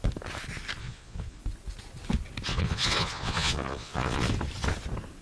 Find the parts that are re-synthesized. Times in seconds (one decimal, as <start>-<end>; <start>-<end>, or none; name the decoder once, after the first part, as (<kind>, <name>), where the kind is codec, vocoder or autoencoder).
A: 0.8-1.4 (vocoder, Vocos); 2.5-4.3